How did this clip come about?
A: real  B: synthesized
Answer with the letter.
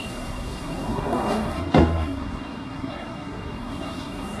B